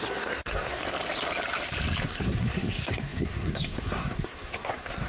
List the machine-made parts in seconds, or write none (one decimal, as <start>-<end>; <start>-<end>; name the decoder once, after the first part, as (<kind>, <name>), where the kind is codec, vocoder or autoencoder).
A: 0.0-0.8 (codec, SNAC); 2.0-5.1